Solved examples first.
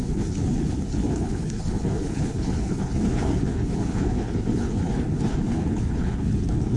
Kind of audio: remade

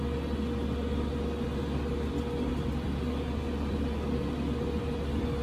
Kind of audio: recorded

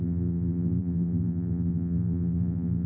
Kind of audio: remade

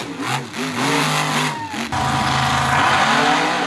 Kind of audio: recorded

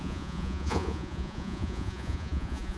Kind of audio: remade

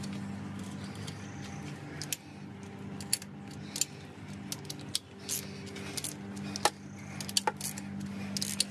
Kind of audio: recorded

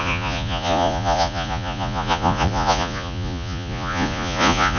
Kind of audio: remade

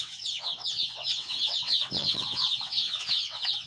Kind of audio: remade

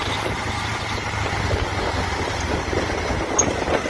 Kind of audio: recorded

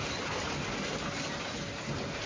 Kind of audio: recorded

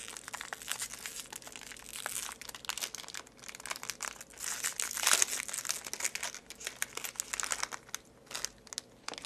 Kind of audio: recorded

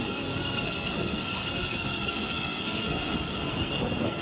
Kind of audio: remade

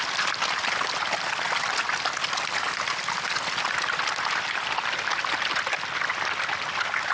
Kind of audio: recorded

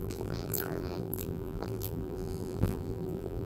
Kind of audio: remade